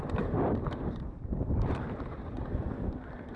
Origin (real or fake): fake